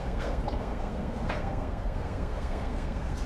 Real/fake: fake